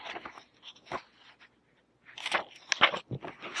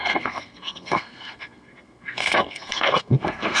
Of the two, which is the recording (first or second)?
first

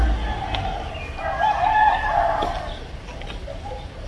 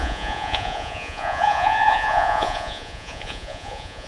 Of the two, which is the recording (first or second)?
first